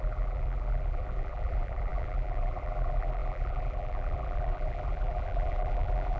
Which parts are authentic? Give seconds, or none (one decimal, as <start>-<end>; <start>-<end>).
none